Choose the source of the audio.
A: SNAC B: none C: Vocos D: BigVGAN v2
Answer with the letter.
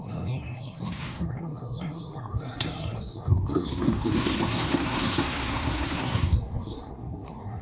A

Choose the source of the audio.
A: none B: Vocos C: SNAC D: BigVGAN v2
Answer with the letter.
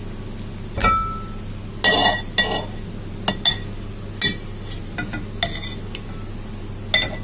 A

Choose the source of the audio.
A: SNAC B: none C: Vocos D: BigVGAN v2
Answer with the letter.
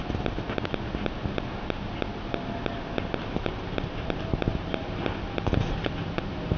B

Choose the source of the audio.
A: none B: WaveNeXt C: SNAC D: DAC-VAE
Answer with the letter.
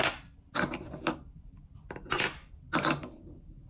A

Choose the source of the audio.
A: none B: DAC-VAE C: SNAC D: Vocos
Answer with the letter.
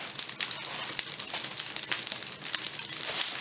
A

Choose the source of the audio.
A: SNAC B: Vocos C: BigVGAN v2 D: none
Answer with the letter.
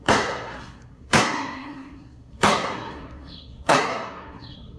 A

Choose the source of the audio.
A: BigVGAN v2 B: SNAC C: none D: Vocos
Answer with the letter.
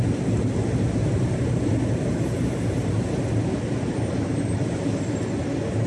C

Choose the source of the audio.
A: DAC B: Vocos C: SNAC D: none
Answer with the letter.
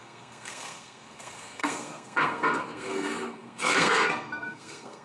C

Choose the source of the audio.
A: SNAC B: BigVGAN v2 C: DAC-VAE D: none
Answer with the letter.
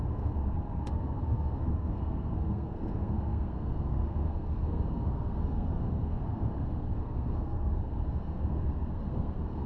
A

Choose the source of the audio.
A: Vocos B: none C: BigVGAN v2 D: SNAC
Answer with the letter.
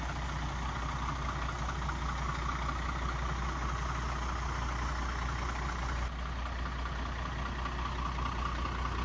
B